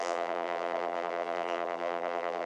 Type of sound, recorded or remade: remade